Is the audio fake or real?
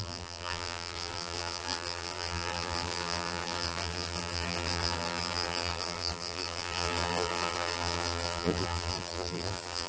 fake